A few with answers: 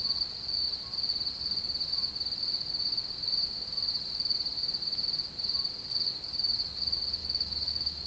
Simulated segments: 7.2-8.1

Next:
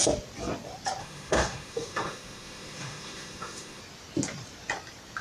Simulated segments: 1.0-3.8

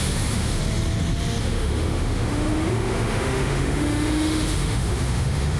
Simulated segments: 0.0-0.6; 1.4-5.6

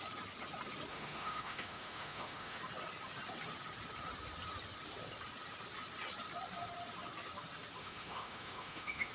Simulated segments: 0.9-2.6; 7.8-9.1